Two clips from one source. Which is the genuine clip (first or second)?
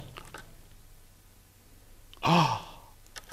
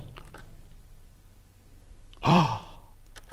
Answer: first